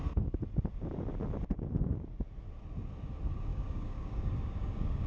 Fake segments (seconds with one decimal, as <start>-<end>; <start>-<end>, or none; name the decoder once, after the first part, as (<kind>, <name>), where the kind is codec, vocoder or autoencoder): 3.5-5.1 (codec, DAC)